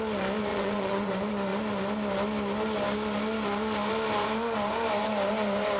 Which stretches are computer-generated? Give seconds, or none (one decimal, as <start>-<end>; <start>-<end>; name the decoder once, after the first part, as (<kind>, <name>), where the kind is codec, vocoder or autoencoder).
0.5-1.1 (vocoder, WaveNeXt)